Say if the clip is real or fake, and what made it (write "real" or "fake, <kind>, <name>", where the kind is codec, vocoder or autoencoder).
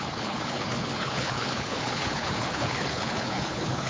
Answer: fake, codec, HILCodec